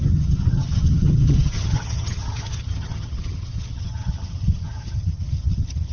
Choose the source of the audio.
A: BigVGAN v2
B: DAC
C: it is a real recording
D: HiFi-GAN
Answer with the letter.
D